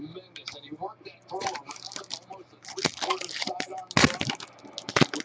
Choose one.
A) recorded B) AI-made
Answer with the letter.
A